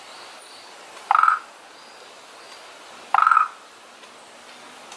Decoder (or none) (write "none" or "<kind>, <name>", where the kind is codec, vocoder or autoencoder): none